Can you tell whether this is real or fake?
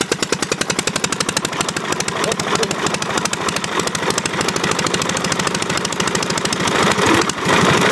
real